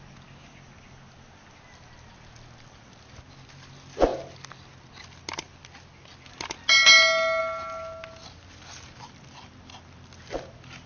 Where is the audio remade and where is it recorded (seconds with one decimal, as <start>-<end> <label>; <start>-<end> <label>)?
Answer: 0.0-10.9 recorded